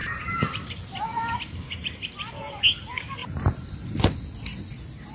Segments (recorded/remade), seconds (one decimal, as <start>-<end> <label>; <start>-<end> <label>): 0.0-0.7 remade; 0.7-1.8 recorded; 1.8-2.6 remade; 2.6-3.2 recorded; 3.2-3.7 remade; 3.7-5.1 recorded